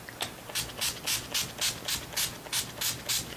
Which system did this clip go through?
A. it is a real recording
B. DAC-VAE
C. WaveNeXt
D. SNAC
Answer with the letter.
A